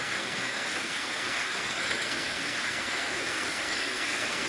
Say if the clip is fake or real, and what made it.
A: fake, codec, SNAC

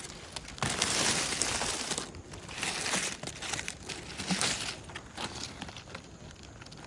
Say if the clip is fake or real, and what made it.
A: real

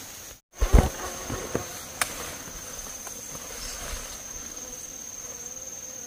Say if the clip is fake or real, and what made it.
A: real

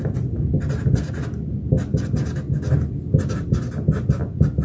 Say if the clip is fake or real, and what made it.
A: real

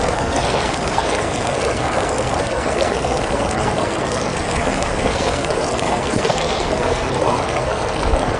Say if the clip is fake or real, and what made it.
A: fake, codec, SNAC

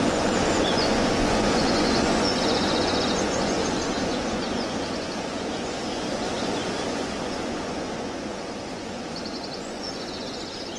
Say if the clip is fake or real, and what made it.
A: fake, vocoder, Vocos